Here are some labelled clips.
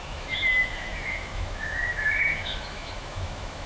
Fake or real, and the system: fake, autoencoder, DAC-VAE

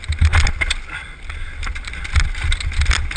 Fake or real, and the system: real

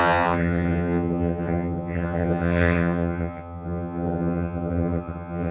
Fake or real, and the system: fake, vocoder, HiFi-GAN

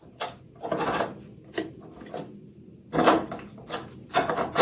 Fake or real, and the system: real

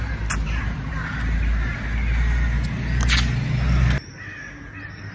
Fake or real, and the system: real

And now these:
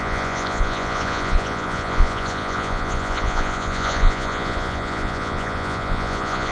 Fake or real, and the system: fake, vocoder, Vocos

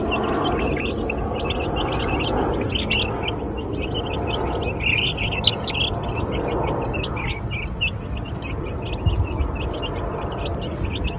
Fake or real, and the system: real